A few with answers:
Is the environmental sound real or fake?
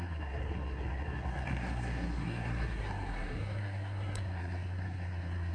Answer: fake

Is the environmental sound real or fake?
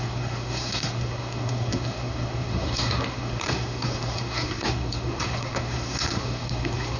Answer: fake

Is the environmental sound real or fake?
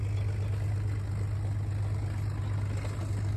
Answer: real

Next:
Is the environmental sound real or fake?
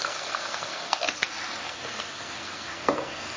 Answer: fake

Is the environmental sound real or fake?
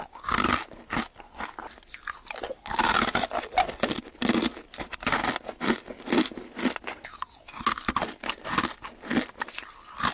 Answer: real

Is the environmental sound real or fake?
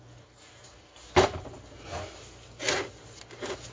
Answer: real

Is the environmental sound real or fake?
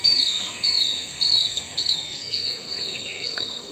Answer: fake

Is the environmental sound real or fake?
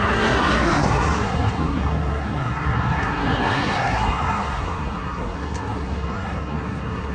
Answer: fake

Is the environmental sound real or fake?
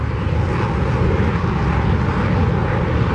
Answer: real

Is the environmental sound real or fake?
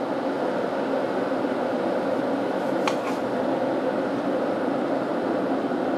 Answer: real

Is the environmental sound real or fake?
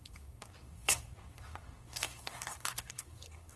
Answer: fake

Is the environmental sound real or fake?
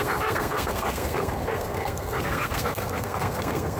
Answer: fake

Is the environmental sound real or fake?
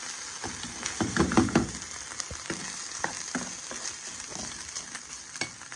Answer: real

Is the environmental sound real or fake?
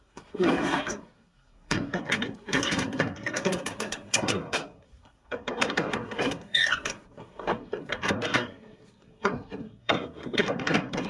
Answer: fake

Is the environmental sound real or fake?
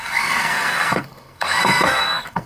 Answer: fake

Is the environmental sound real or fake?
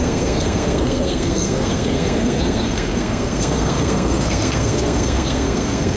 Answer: fake